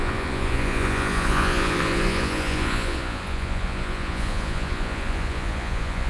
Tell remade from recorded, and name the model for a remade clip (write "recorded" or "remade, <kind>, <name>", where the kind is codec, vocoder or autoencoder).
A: remade, vocoder, Vocos